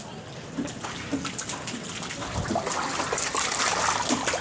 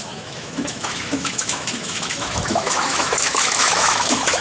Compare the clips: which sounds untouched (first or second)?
first